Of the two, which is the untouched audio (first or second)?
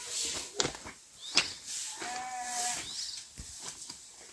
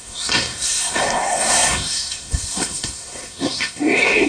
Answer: first